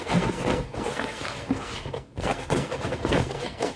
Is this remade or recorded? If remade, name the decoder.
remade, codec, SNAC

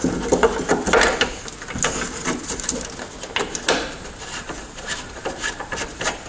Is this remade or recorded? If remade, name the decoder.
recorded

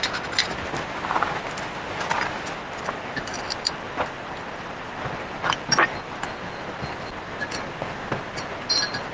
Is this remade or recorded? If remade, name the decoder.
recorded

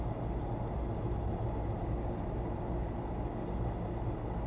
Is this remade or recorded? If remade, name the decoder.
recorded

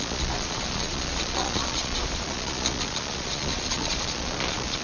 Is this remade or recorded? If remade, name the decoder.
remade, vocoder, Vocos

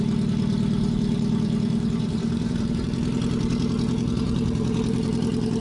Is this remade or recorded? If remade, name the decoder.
remade, vocoder, BigVGAN v2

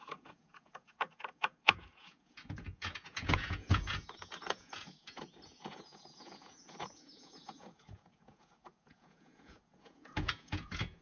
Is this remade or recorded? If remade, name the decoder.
remade, vocoder, Vocos